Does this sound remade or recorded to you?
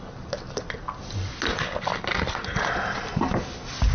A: recorded